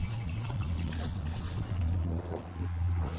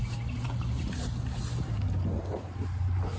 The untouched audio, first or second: second